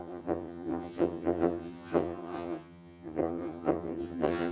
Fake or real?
fake